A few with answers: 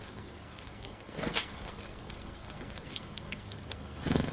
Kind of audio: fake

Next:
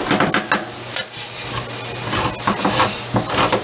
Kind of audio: real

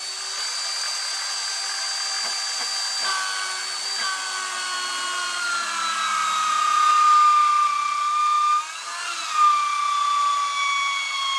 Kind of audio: real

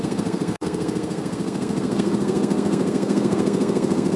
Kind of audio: fake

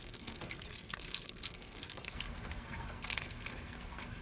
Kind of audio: fake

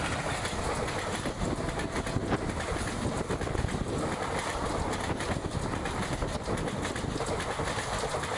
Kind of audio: real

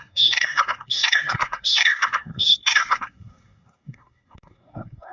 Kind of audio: fake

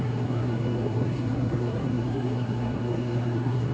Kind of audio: fake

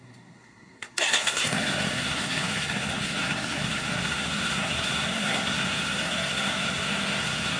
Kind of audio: fake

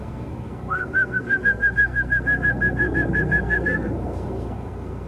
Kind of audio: fake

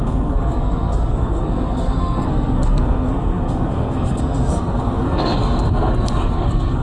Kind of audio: fake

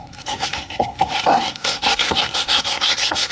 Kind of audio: fake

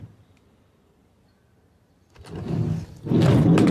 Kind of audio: real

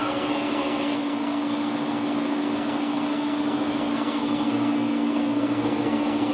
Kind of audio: fake